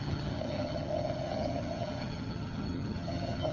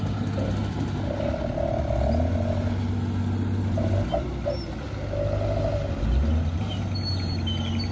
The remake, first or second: first